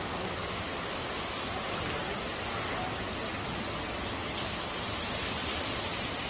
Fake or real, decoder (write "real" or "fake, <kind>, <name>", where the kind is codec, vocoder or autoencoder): real